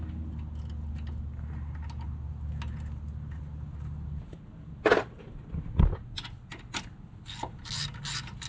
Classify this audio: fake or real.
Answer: real